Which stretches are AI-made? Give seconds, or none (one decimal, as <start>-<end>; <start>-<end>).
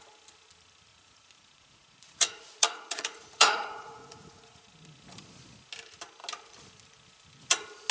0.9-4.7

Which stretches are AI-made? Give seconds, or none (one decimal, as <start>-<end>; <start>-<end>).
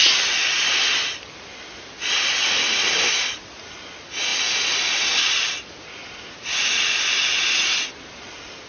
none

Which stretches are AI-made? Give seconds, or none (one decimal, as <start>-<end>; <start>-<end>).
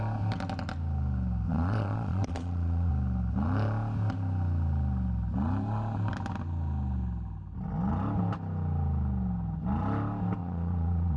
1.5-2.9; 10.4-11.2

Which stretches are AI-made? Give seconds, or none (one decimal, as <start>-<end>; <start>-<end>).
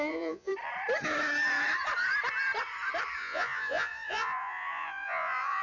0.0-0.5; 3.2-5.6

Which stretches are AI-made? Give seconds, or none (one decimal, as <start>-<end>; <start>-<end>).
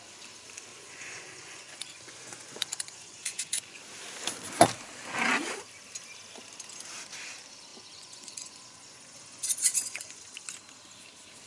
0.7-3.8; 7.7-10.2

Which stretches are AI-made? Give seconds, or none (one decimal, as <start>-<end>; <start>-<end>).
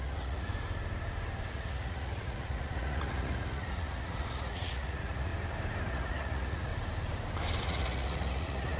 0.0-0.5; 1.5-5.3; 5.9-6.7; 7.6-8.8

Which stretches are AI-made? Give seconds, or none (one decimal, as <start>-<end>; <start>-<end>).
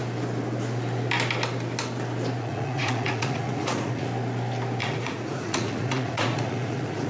2.4-4.1; 4.8-7.1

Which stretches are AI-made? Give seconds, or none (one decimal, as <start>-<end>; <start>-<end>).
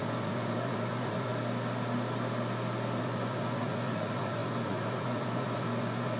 0.0-1.3; 3.0-6.2